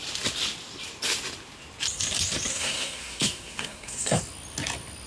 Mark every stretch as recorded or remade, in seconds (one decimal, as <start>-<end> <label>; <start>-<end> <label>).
0.0-2.5 recorded; 2.5-4.2 remade; 4.2-5.1 recorded